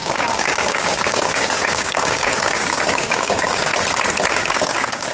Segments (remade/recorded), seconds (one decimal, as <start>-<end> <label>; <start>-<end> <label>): 0.0-3.7 remade; 3.7-4.3 recorded; 4.3-5.1 remade